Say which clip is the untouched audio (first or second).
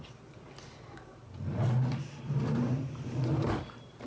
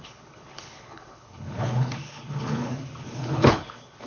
first